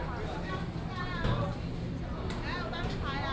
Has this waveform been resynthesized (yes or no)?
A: no